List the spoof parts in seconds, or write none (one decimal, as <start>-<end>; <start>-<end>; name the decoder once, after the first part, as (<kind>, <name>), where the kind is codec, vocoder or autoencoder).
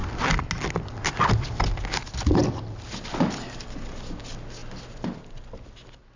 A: none